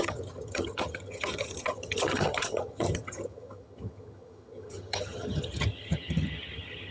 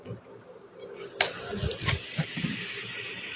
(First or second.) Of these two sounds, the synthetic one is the first